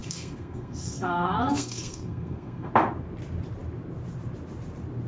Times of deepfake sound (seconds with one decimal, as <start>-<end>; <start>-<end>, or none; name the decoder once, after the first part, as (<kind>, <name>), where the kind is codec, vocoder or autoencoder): 0.0-2.7 (codec, SNAC)